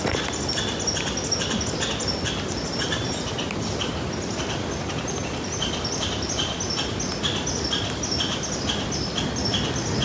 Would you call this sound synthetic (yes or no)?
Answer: no